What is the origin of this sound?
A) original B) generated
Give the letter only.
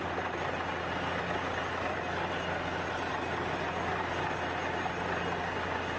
A